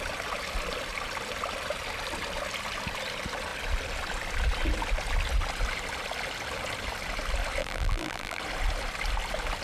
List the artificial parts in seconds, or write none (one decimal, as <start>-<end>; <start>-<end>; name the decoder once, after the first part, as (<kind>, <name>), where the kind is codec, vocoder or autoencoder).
7.6-8.4 (vocoder, BigVGAN v2)